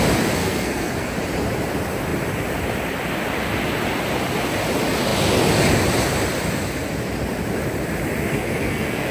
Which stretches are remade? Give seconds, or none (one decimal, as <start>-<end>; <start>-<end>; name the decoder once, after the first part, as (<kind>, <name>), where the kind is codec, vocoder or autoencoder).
0.4-1.1 (codec, SNAC); 8.3-9.1